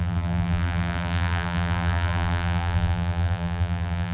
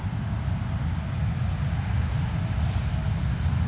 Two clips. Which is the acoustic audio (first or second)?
second